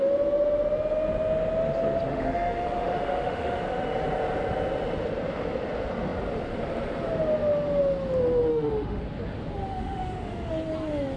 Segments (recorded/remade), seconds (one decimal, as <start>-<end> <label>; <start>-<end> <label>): 0.0-2.1 recorded; 2.1-3.6 remade; 3.6-8.5 recorded; 8.5-9.0 remade; 9.0-9.7 recorded; 9.7-10.5 remade; 10.5-11.2 recorded